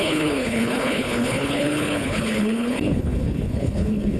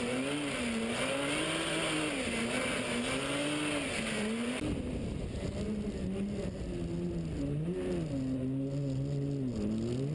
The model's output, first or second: first